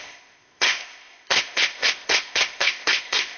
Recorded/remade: remade